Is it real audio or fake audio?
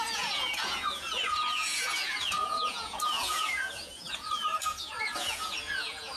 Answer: fake